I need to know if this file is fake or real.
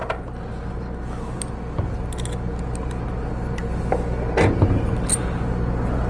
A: real